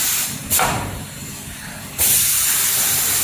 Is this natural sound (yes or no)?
yes